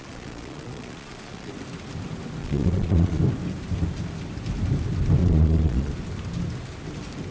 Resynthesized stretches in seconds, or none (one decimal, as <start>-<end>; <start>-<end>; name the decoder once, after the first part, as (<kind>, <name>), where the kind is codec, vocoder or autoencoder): 0.0-1.5 (vocoder, Vocos); 2.4-3.2; 5.2-5.9